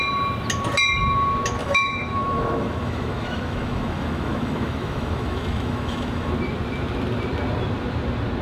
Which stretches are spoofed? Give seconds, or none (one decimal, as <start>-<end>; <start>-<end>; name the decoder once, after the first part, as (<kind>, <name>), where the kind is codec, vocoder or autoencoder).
1.6-6.3 (autoencoder, DAC-VAE)